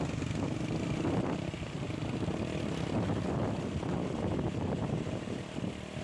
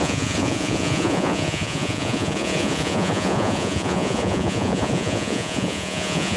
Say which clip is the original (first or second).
first